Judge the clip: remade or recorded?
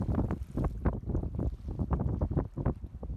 recorded